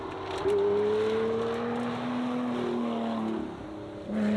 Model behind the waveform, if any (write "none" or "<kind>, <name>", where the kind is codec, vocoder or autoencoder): none